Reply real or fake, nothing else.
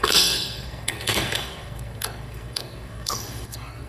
fake